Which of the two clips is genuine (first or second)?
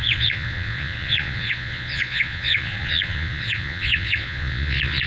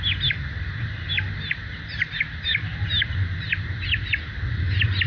second